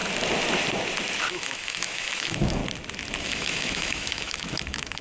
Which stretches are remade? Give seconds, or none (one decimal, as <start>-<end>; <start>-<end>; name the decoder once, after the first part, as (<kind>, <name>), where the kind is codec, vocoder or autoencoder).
1.3-2.6 (autoencoder, DAC-VAE); 3.2-5.0